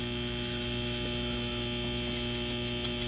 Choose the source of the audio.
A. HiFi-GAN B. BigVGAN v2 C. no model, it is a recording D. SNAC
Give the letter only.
C